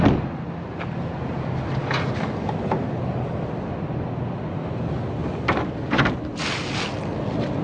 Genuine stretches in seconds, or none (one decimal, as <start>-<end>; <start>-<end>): 0.0-7.6